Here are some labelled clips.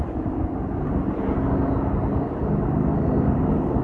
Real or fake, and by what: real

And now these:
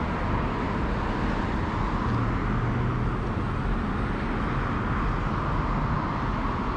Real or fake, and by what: real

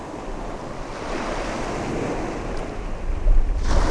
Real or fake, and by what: real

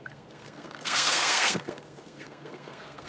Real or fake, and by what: fake, codec, SNAC